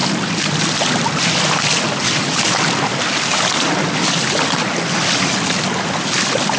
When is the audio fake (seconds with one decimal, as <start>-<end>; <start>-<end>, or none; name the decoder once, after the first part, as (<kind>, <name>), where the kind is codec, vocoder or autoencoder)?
none